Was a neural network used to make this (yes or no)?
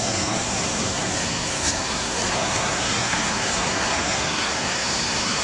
yes